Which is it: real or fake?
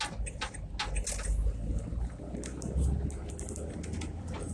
real